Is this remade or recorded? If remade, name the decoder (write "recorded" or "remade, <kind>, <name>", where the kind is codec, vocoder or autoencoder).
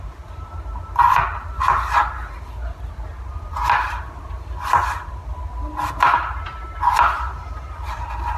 recorded